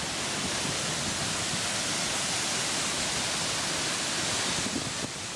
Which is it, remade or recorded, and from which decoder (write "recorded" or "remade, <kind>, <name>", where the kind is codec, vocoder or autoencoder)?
recorded